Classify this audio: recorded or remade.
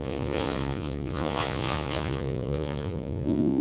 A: remade